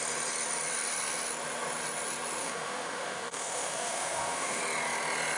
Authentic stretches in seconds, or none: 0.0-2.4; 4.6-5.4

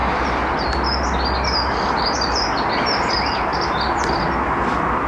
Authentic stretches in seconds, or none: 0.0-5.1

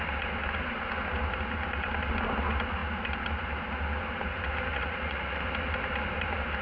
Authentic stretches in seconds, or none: 0.0-4.7; 5.4-6.6

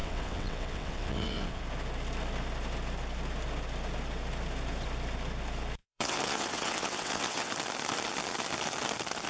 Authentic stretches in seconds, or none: 1.6-5.8; 7.5-9.3

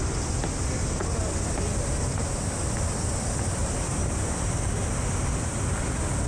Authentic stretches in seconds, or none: 0.0-3.6; 4.8-6.3